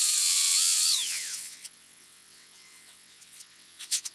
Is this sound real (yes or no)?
no